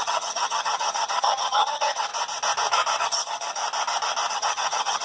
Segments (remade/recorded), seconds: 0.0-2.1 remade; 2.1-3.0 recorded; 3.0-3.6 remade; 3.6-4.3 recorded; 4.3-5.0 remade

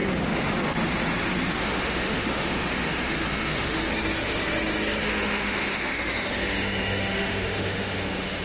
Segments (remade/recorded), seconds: 0.0-1.6 recorded; 1.6-3.9 remade; 3.9-5.0 recorded; 5.0-8.4 remade